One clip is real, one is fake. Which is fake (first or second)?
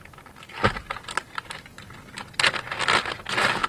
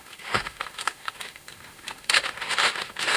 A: second